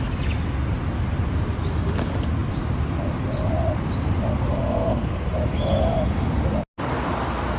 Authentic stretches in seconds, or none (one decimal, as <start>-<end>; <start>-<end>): 0.0-4.5; 5.3-7.6